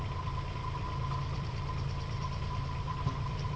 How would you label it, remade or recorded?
remade